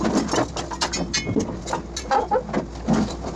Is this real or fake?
real